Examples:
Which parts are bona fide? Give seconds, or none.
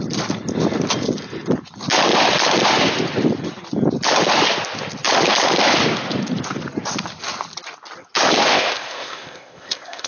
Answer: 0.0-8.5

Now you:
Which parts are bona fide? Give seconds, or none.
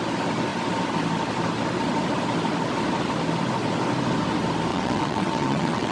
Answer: 0.0-4.7